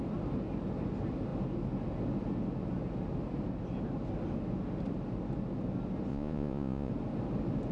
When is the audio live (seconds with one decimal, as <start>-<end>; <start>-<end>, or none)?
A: 0.0-6.1; 6.9-7.7